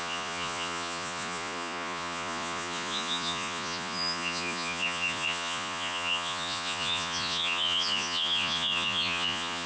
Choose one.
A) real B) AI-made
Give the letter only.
B